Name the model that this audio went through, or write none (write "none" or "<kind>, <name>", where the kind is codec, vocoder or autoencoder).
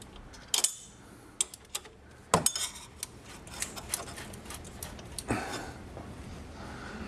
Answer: none